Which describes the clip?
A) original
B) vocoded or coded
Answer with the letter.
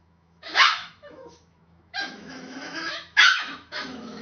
B